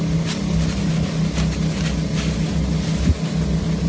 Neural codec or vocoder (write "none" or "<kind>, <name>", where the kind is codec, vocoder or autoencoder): none